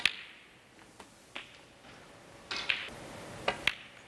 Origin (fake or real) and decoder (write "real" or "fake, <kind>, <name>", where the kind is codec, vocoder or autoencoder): real